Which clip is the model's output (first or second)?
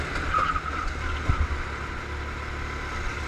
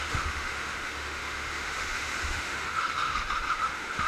second